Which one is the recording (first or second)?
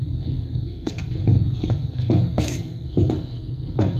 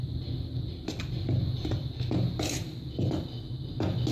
second